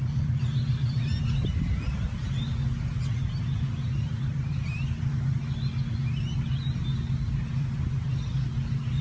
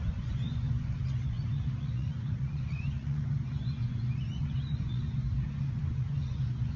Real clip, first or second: first